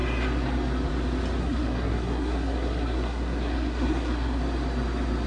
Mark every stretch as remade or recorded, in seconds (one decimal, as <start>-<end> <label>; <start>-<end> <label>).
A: 0.0-1.4 recorded; 1.4-4.4 remade; 4.4-5.3 recorded